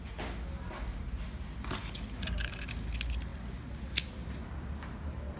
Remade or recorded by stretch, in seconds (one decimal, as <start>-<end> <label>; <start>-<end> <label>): 0.0-5.4 recorded